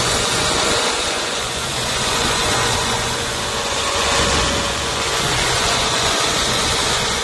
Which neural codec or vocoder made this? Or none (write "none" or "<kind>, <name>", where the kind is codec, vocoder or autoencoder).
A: vocoder, Vocos